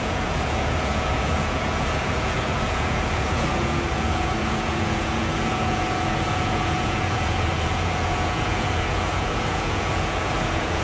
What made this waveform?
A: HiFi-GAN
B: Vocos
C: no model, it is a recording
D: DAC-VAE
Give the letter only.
B